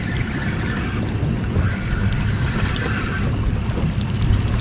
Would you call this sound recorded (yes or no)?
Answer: yes